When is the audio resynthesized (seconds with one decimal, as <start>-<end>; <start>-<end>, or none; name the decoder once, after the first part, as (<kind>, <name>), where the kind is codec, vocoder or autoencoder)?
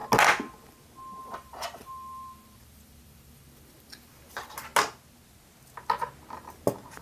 1.2-4.7 (vocoder, BigVGAN v2)